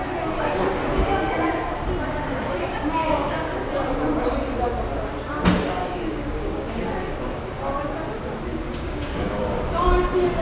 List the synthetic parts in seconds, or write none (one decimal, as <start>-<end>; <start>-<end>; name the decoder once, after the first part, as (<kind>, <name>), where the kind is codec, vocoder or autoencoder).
3.0-3.7 (codec, DAC); 5.8-6.8; 8.5-9.4